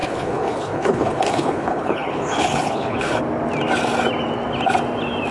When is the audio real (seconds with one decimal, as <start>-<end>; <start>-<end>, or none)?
3.2-5.3